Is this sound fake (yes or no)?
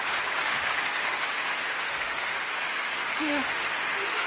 yes